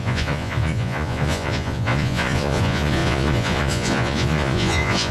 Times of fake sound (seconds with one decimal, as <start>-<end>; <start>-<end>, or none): 0.0-5.1